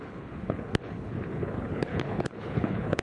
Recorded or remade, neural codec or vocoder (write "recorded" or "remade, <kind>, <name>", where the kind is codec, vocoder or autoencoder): remade, codec, HILCodec